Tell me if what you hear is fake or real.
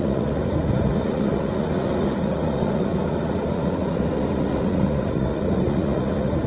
fake